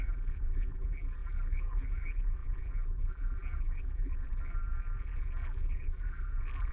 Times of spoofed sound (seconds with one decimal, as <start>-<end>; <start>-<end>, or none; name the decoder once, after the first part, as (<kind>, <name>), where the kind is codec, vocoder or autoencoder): 0.0-6.7 (vocoder, BigVGAN v2)